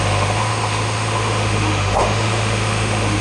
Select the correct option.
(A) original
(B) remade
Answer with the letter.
B